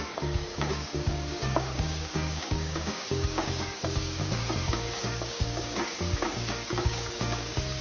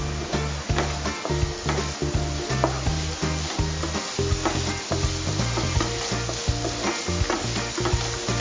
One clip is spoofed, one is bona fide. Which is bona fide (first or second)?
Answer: second